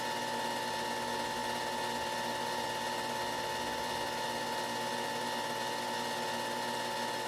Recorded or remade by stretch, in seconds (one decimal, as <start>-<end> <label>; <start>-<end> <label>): 0.0-7.3 recorded